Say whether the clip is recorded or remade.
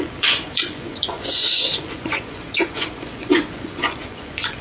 remade